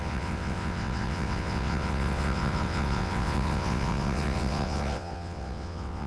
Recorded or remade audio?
remade